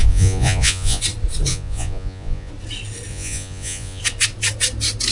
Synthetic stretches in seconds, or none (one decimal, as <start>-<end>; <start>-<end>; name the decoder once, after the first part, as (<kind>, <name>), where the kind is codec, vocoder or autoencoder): 0.0-1.0 (vocoder, Vocos); 1.5-2.5; 3.1-4.0